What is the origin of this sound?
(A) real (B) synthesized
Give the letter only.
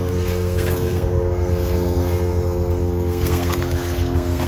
B